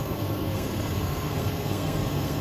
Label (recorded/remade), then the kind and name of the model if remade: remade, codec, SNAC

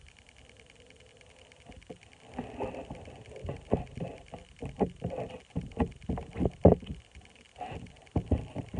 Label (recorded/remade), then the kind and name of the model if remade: recorded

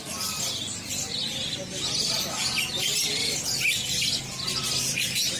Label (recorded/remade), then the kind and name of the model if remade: recorded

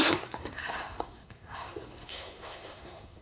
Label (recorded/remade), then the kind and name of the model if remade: remade, codec, SNAC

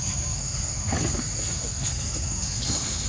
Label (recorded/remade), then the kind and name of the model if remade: remade, codec, SNAC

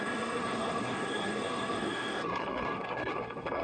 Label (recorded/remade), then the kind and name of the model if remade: remade, codec, SNAC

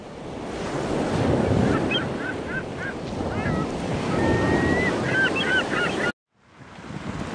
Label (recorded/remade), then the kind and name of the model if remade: recorded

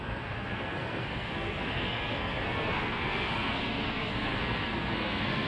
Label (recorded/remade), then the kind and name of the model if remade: remade, codec, SNAC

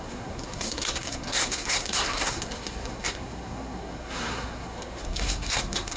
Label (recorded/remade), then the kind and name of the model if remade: remade, codec, SNAC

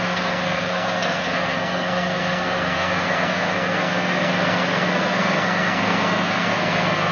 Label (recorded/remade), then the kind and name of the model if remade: remade, codec, SNAC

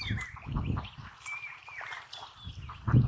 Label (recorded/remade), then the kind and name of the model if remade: recorded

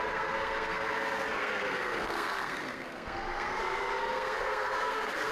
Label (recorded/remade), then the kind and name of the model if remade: remade, codec, SNAC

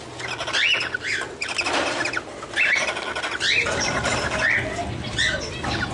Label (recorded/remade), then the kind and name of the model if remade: recorded